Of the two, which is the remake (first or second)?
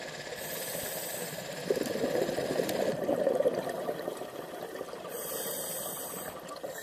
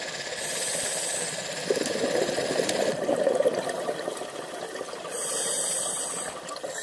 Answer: first